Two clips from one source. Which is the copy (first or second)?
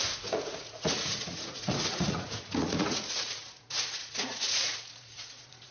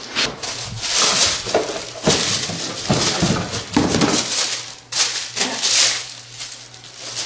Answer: first